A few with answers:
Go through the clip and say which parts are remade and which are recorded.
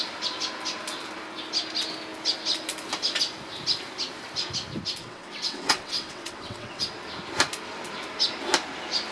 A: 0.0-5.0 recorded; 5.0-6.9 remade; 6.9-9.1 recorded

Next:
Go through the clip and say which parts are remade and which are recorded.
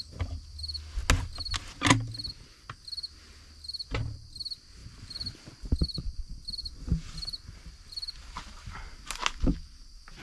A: 0.0-4.8 recorded; 4.8-8.7 remade; 8.7-10.2 recorded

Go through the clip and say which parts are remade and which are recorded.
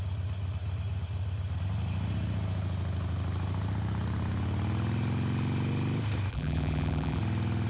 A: 0.0-6.3 recorded; 6.3-7.2 remade; 7.2-7.7 recorded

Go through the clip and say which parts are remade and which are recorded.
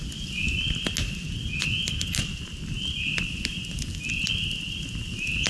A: 0.0-5.5 recorded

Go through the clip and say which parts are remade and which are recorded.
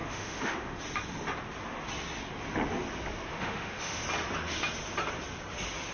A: 0.0-0.8 remade; 0.8-3.3 recorded; 3.3-4.0 remade; 4.0-5.9 recorded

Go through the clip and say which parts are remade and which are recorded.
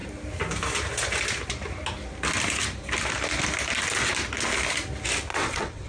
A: 0.0-5.3 recorded; 5.3-5.9 remade